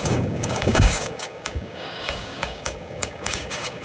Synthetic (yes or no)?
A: yes